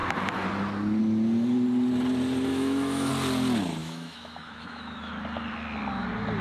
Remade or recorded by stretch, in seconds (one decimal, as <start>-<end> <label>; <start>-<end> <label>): 0.0-2.5 recorded; 2.5-3.1 remade; 3.1-3.8 recorded; 3.8-5.1 remade; 5.1-6.4 recorded